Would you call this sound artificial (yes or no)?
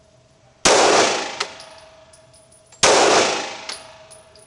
no